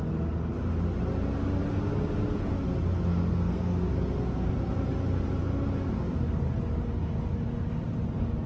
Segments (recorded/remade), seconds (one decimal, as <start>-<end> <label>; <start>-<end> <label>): 0.0-3.1 recorded; 3.1-3.9 remade; 3.9-8.5 recorded